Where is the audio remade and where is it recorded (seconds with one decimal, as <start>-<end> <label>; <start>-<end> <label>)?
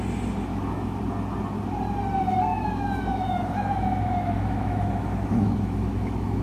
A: 0.0-0.5 recorded; 0.5-1.0 remade; 1.0-2.5 recorded; 2.5-6.4 remade